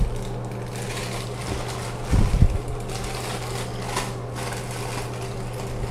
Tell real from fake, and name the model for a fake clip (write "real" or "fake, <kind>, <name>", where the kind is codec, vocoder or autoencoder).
real